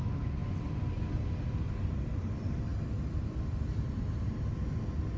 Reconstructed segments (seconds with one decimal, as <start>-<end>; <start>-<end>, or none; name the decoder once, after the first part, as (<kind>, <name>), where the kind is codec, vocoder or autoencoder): none